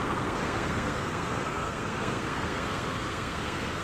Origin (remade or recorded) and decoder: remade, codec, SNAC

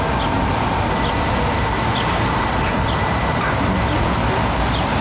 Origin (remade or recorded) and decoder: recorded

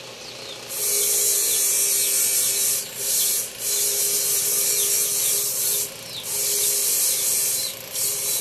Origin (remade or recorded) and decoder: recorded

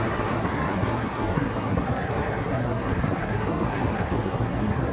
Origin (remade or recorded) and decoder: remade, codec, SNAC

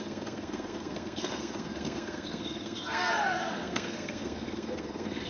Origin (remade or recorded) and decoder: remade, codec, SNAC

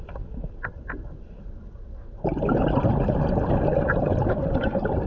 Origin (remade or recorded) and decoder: recorded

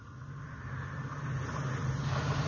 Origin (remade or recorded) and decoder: recorded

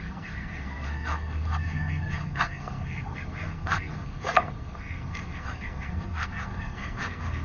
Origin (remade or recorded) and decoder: remade, codec, SNAC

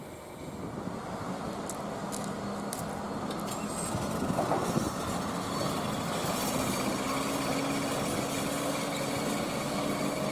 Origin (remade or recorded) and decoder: recorded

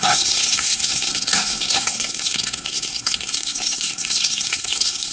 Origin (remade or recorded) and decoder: remade, codec, SNAC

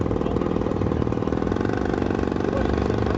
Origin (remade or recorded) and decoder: recorded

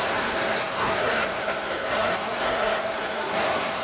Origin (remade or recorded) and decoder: remade, codec, SNAC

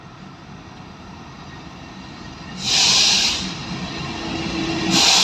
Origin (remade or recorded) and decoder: recorded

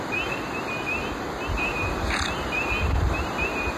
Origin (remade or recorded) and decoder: recorded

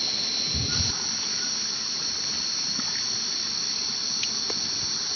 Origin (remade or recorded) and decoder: recorded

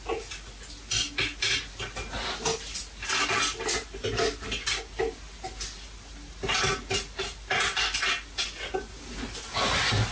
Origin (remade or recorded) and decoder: recorded